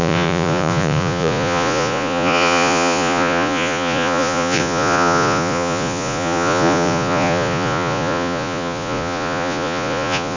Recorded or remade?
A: remade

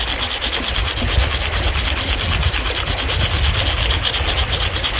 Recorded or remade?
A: recorded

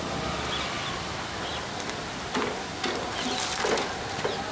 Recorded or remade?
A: recorded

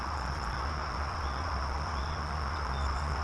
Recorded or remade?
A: remade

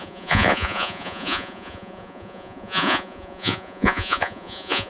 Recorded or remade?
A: remade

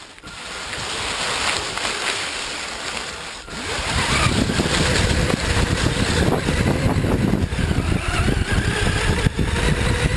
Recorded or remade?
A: recorded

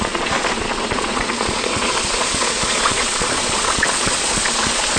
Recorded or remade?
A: remade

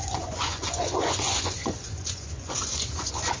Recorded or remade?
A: remade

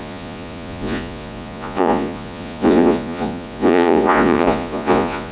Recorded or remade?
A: remade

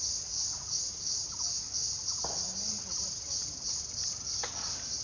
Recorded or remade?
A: recorded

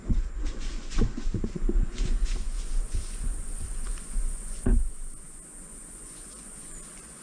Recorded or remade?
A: remade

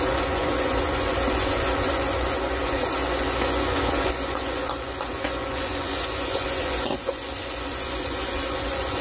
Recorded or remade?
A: remade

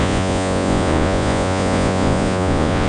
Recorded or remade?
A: remade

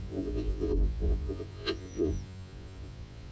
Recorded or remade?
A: remade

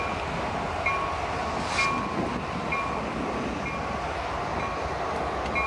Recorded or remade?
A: recorded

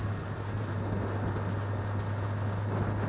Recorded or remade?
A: recorded